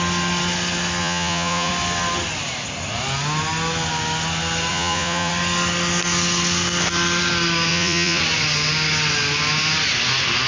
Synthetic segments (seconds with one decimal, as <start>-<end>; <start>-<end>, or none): 1.0-1.7; 4.7-5.3; 7.7-8.2

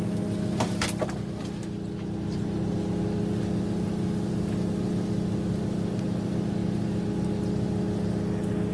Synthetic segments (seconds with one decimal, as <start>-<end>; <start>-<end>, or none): none

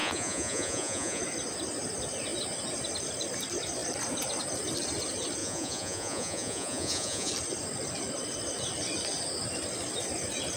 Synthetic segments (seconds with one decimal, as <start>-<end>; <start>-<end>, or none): 0.0-1.2; 5.4-7.3

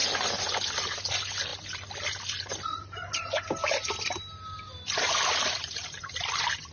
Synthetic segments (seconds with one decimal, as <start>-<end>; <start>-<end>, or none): none

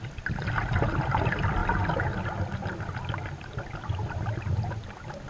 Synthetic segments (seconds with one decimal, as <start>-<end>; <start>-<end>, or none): none

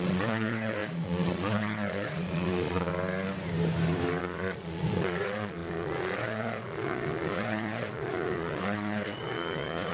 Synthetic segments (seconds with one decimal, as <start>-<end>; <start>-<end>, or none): 0.0-2.9; 4.2-9.9

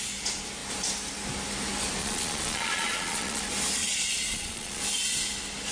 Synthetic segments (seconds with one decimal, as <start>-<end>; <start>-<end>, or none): 2.0-3.4; 3.8-4.8